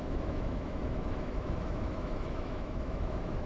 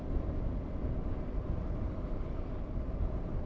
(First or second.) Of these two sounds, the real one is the second